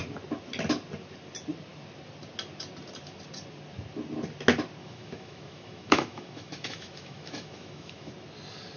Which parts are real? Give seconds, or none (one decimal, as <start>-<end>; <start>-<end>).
0.0-4.8; 8.1-8.8